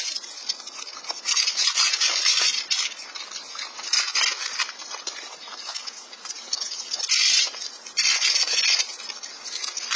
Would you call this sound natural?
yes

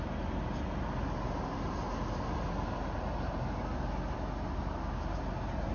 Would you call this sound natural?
yes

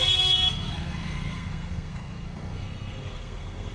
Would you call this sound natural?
no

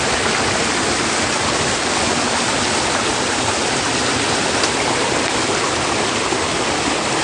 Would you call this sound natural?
yes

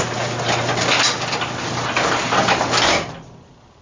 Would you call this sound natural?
yes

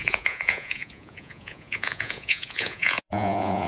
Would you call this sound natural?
no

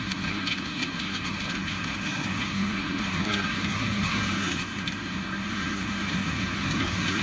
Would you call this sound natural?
no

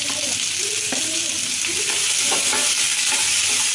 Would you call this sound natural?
yes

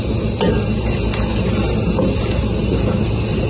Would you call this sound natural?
yes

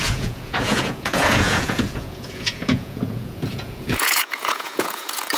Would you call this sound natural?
no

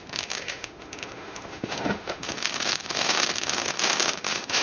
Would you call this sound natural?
no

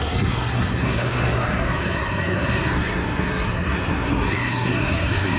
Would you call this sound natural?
no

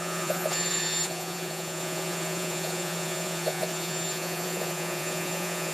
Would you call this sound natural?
no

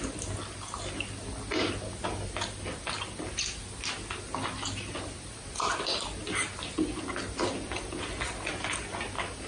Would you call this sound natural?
yes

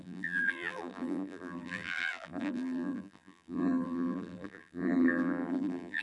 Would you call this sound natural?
no